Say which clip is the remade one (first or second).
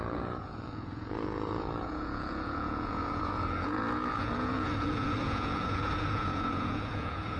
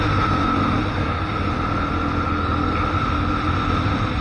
first